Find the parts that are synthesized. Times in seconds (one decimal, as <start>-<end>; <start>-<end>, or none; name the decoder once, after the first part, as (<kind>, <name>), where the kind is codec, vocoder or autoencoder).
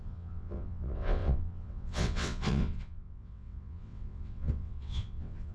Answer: 0.0-5.5 (vocoder, WaveNeXt)